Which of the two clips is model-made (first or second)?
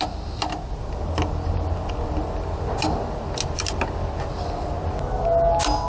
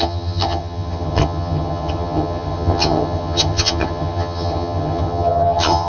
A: second